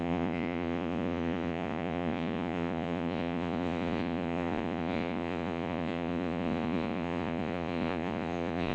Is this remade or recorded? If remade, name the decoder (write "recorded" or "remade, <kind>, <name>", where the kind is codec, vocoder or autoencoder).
remade, vocoder, Vocos